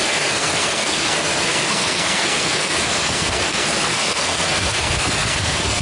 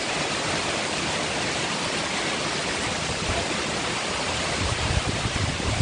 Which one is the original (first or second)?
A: second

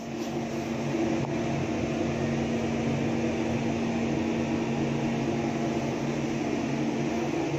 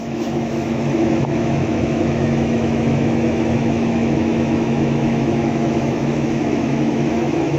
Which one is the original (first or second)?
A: first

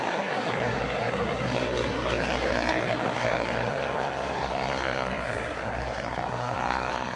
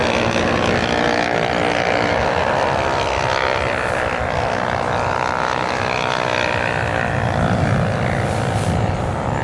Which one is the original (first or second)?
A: second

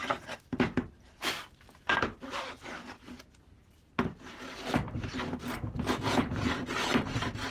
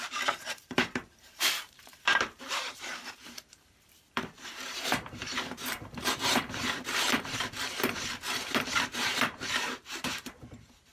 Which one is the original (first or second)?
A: first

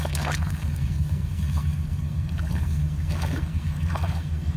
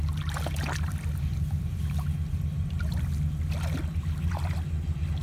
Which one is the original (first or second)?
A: second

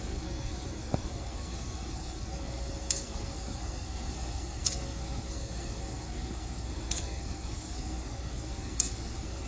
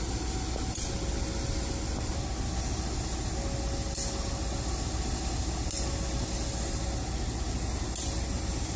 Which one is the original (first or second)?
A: second